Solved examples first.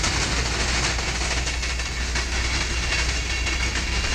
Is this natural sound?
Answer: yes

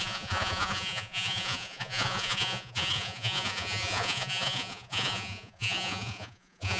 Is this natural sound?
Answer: no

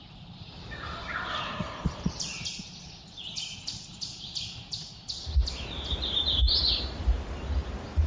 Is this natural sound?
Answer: no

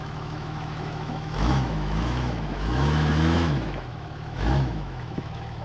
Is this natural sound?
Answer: no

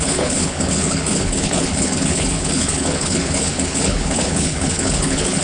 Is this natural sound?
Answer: no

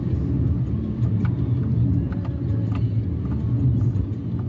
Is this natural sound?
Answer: yes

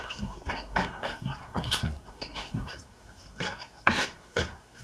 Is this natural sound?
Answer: no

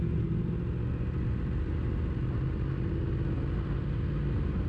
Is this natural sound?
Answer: yes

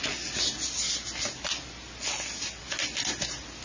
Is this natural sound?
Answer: yes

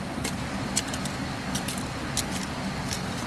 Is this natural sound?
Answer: yes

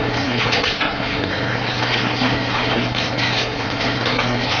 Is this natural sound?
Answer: no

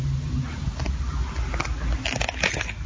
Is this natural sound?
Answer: yes